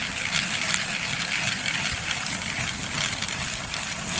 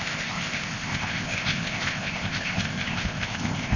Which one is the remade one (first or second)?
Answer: second